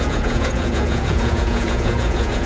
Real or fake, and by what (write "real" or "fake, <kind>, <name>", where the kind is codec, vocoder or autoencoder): fake, vocoder, Vocos